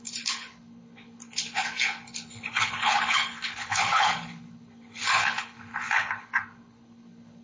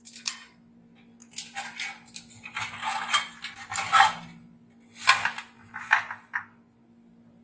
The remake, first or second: first